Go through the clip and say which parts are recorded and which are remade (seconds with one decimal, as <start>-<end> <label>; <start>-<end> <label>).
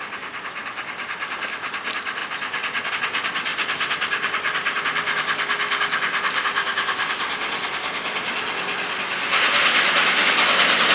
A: 0.0-3.5 recorded; 3.5-4.8 remade; 4.8-10.9 recorded